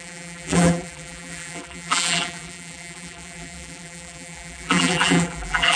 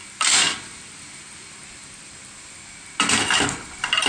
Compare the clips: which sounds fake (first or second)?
first